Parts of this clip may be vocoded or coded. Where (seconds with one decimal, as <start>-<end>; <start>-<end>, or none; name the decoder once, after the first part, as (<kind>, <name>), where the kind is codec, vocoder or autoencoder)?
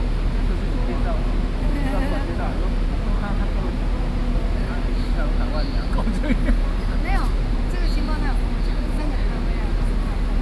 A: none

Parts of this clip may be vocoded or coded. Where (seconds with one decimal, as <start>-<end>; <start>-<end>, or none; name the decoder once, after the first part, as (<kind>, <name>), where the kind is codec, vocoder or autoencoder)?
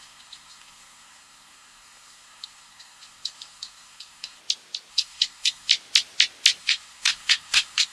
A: 0.0-4.4 (codec, SNAC); 4.9-5.7; 6.6-7.9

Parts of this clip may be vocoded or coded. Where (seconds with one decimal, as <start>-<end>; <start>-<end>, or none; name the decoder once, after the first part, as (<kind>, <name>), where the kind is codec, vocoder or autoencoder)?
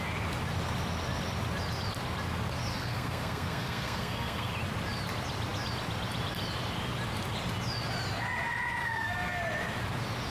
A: 2.7-4.5 (codec, SNAC); 8.8-9.4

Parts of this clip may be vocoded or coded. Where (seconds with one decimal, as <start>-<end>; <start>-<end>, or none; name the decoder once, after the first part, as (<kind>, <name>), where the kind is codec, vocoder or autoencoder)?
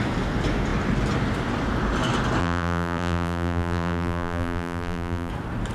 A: 2.4-5.3 (vocoder, BigVGAN v2)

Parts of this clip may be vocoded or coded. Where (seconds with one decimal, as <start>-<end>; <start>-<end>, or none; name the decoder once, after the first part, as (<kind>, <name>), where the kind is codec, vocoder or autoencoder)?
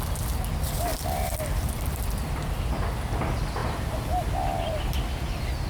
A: 0.9-2.0 (vocoder, BigVGAN v2)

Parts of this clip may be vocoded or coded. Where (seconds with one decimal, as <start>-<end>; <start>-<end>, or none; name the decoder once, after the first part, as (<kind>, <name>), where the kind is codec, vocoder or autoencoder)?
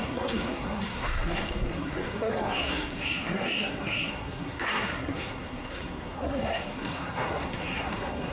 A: 0.0-8.3 (codec, SNAC)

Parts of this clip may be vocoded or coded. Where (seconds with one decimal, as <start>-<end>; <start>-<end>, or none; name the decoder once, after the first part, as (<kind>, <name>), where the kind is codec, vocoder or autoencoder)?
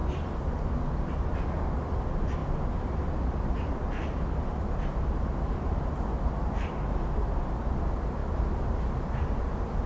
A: none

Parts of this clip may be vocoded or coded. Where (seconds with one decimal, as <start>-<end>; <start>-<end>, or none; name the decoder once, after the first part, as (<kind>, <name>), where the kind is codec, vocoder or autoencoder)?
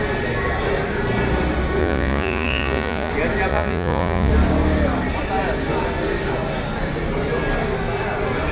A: 1.8-3.1 (vocoder, Vocos); 3.5-4.3